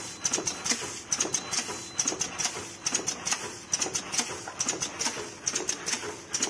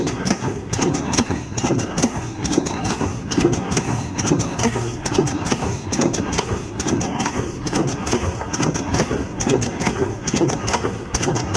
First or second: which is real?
first